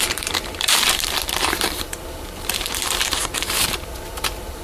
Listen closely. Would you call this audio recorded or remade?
remade